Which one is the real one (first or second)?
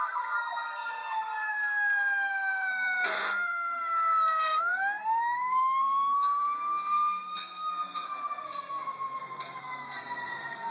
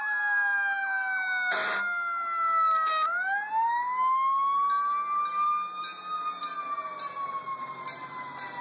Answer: second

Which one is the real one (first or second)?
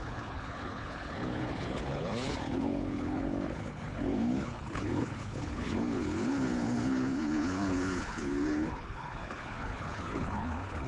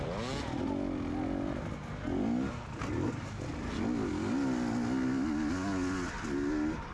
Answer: second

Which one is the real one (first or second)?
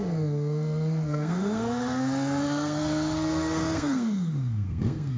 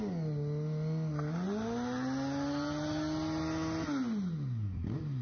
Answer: second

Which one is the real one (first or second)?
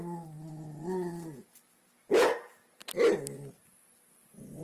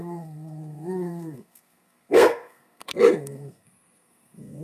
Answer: first